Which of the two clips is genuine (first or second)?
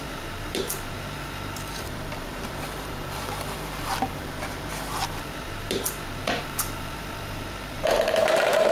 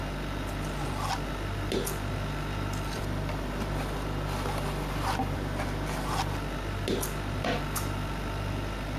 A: second